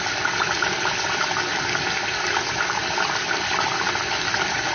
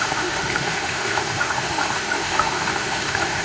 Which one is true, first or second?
first